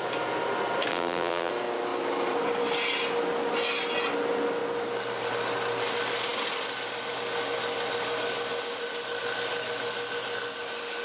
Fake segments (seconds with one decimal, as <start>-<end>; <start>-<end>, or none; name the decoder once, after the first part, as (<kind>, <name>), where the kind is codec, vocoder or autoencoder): 0.9-1.5 (vocoder, BigVGAN v2)